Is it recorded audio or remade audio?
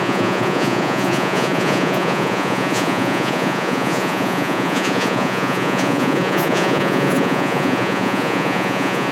remade